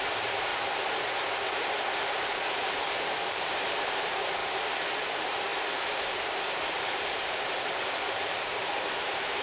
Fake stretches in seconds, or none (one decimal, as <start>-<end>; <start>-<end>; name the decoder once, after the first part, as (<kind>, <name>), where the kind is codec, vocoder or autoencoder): 0.0-0.5 (vocoder, BigVGAN v2); 2.0-4.4; 5.1-9.4